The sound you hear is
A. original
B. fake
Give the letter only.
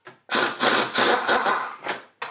A